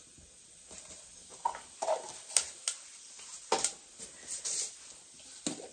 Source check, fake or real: real